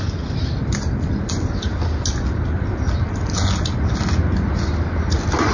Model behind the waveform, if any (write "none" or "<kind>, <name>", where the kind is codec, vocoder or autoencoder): none